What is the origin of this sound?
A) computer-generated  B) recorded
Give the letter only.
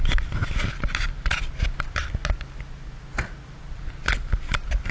B